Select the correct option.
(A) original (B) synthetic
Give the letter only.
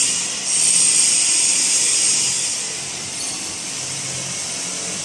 B